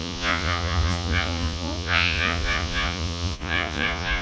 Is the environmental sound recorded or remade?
remade